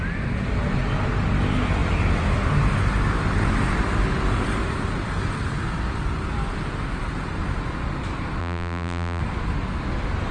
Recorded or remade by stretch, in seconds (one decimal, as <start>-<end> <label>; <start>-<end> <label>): 0.0-8.4 recorded; 8.4-9.2 remade; 9.2-10.3 recorded